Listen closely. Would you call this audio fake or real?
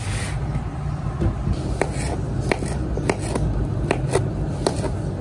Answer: real